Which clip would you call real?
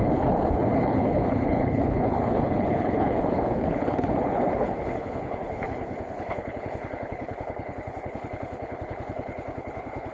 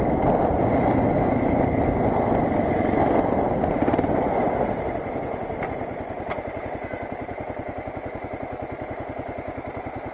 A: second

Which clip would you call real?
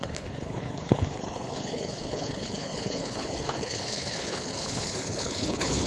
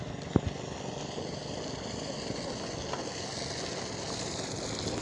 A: second